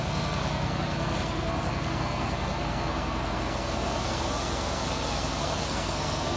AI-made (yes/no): yes